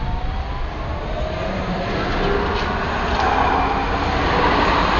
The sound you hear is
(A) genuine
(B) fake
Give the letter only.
A